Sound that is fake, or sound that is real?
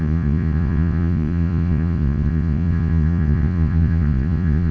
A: fake